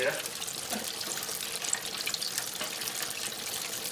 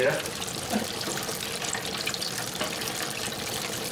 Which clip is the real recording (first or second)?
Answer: first